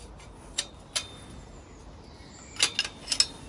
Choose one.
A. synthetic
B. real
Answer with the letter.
B